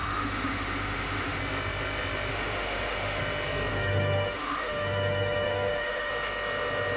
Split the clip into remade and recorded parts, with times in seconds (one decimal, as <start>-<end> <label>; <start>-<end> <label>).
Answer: 0.0-1.4 remade; 1.4-2.3 recorded; 2.3-3.2 remade; 3.2-3.7 recorded; 3.7-6.1 remade; 6.1-7.0 recorded